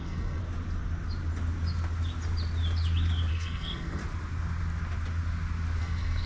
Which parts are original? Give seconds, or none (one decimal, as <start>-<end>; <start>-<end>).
0.4-3.3; 4.0-5.8